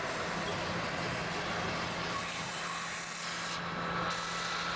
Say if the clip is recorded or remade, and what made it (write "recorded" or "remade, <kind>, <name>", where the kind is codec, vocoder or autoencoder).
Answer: recorded